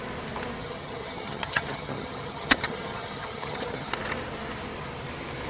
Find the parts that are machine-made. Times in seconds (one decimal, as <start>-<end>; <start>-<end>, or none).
0.6-3.9